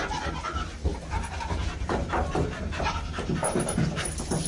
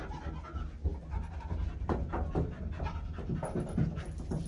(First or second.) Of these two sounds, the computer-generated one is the first